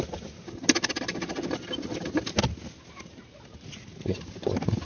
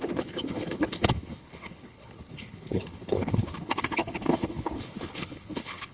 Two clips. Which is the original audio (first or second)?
first